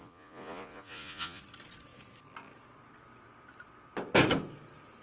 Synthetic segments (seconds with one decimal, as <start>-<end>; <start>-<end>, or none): 0.0-1.4